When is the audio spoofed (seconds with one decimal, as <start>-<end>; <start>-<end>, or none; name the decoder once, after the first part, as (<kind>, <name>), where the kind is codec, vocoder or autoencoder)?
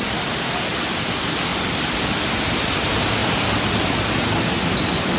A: 1.5-2.3 (vocoder, BigVGAN v2); 3.2-4.2